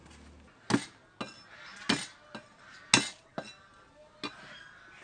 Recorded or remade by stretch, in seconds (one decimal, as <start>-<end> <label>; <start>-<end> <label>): 0.0-5.0 recorded